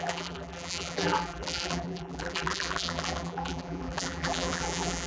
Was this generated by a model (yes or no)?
yes